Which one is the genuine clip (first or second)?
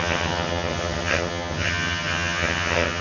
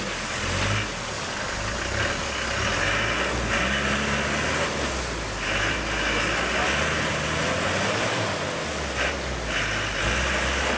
second